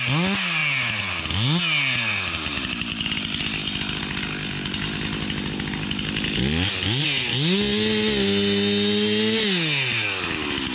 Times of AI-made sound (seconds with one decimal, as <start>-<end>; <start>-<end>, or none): none